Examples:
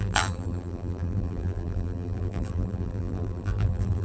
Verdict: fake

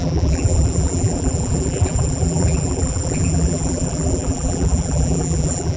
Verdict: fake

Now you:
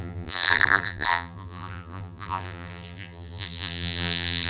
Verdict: fake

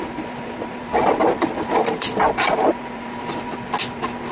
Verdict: real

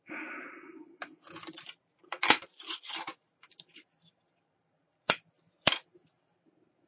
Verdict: fake